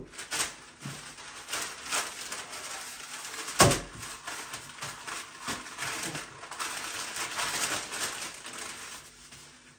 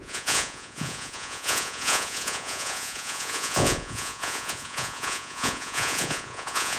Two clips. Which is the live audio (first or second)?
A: first